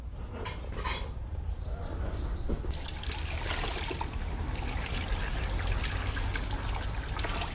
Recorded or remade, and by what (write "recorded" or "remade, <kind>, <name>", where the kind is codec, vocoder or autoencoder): recorded